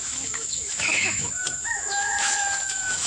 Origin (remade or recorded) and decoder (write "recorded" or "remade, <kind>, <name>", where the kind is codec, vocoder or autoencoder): remade, autoencoder, DAC-VAE